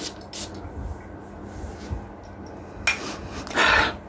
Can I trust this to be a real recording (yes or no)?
yes